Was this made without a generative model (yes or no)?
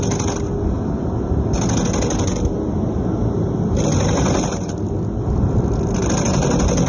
yes